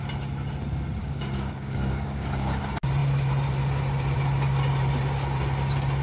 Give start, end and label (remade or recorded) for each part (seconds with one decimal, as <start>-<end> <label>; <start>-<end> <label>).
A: 0.0-1.0 recorded; 1.0-2.6 remade; 2.6-6.0 recorded